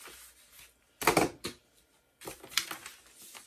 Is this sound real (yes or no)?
yes